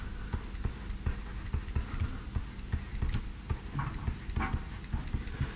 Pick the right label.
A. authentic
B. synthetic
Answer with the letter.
A